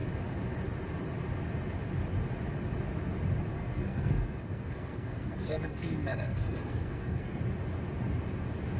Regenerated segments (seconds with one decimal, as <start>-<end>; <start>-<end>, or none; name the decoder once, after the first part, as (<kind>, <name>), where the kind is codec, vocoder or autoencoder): 3.5-7.4 (codec, SNAC)